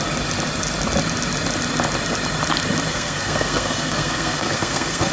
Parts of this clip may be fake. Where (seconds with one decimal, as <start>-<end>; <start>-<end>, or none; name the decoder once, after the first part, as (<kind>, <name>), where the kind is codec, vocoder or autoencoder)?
2.9-5.1 (codec, SNAC)